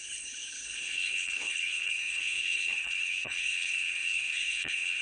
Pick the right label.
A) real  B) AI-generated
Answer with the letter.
B